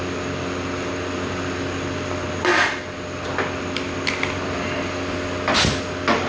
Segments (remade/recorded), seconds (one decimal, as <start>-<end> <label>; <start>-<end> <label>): 0.0-6.3 recorded